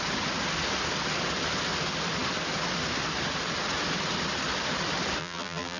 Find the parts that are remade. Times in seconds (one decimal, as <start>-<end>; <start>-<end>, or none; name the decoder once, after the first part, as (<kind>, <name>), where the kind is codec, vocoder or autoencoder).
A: 5.2-5.8 (vocoder, BigVGAN v2)